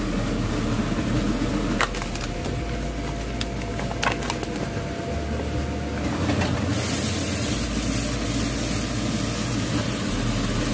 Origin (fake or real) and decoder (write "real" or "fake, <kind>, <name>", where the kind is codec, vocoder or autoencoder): real